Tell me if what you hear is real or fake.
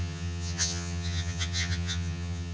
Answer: fake